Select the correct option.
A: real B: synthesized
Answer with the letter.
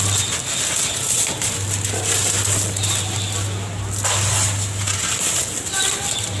A